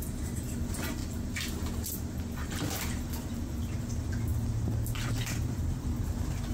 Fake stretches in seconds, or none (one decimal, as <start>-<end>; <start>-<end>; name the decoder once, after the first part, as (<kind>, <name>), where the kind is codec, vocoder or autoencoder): none